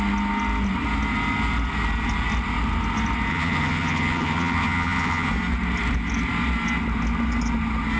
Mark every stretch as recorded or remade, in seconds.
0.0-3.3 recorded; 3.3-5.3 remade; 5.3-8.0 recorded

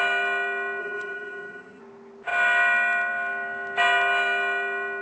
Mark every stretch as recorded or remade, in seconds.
0.0-0.8 recorded; 0.8-1.8 remade; 1.8-5.0 recorded

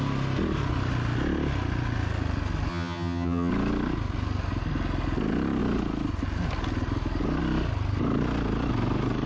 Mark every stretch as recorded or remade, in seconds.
0.0-2.7 recorded; 2.7-3.5 remade; 3.5-9.3 recorded